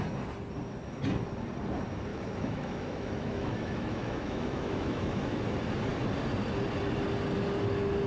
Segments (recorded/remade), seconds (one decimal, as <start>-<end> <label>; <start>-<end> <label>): 0.0-2.1 recorded; 2.1-5.4 remade; 5.4-8.1 recorded